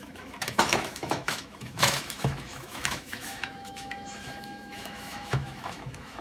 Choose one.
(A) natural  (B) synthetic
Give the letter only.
B